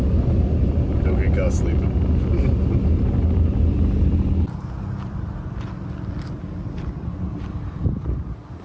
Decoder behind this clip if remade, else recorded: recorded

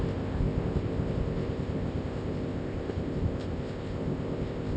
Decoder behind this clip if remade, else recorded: remade, codec, ZipCodec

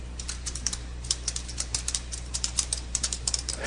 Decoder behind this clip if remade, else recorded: remade, vocoder, BigVGAN v2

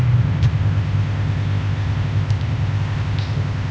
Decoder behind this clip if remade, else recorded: remade, codec, ZipCodec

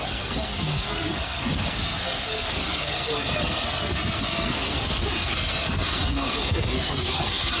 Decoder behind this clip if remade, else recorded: remade, codec, SNAC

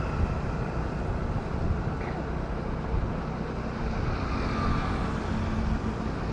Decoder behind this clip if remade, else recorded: recorded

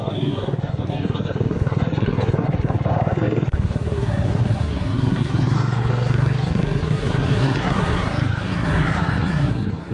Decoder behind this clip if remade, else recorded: remade, codec, SNAC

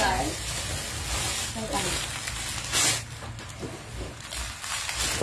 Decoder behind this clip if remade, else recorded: recorded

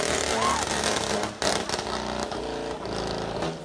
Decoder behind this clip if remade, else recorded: recorded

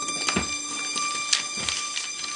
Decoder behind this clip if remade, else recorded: recorded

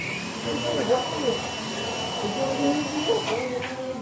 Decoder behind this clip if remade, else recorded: recorded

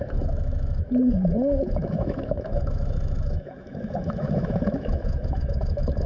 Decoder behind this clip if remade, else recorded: remade, autoencoder, DAC-VAE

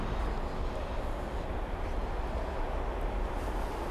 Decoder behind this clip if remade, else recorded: recorded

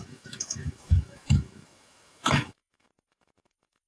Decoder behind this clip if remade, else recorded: remade, autoencoder, DAC-VAE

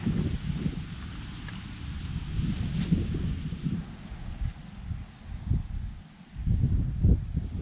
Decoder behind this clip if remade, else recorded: recorded